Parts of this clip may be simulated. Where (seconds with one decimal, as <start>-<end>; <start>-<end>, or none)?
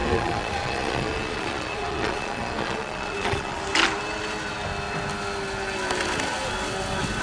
0.0-3.6